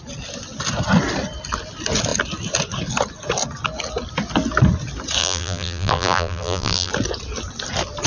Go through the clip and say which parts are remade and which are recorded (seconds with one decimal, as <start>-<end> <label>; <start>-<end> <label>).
0.0-5.2 recorded; 5.2-6.9 remade; 6.9-8.1 recorded